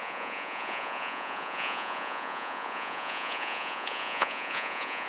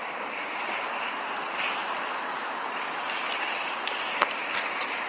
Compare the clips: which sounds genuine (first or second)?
second